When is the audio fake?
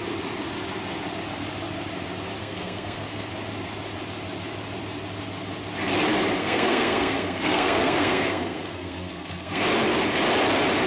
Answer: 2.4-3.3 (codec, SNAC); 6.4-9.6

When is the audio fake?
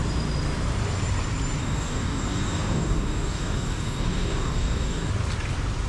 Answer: 1.6-5.1 (codec, DAC)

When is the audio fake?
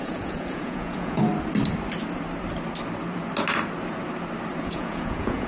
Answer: 0.0-1.3 (vocoder, Vocos); 4.6-5.5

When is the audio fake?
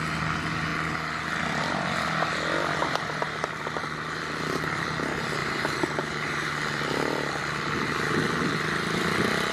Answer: 2.8-3.6 (vocoder, BigVGAN v2); 5.4-6.5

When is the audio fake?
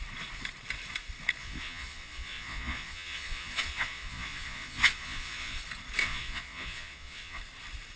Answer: 1.4-5.6 (vocoder, Vocos); 6.0-7.4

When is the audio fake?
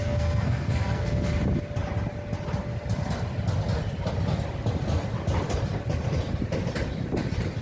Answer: 0.0-1.3 (codec, SNAC)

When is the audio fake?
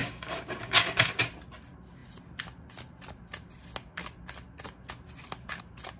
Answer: 0.0-1.1 (codec, DAC)